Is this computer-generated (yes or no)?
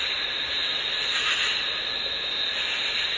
no